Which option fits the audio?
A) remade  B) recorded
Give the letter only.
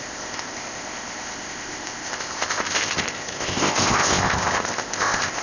A